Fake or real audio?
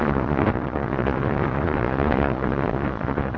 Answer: fake